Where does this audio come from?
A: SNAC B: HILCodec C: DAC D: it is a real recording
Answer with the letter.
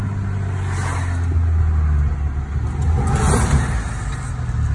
D